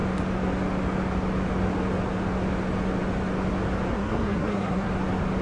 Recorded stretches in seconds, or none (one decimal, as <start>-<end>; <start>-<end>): 0.0-3.9; 4.9-5.4